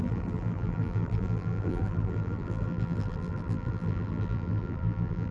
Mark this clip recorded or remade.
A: remade